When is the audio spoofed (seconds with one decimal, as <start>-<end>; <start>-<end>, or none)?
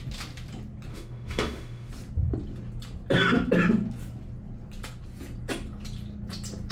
0.9-1.9